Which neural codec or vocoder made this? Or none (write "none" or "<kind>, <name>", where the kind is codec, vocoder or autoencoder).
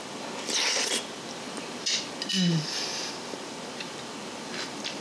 none